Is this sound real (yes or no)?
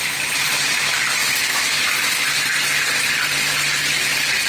yes